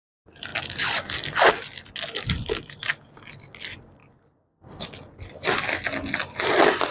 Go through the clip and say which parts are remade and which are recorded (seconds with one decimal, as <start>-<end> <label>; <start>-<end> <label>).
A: 0.0-6.9 recorded

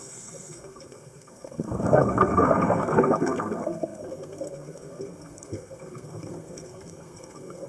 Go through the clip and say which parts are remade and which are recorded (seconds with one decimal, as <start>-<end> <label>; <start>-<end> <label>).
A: 0.0-7.7 remade

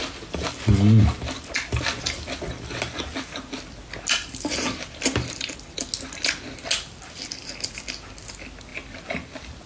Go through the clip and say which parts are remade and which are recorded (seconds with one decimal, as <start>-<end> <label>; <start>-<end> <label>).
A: 0.0-9.7 recorded

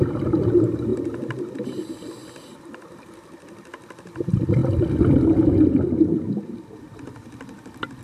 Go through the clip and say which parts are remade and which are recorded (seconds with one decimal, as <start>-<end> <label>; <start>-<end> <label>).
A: 0.0-8.0 recorded

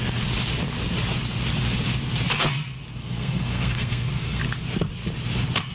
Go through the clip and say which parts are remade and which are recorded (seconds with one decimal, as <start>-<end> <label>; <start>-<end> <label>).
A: 0.0-3.0 recorded; 3.0-4.4 remade; 4.4-5.7 recorded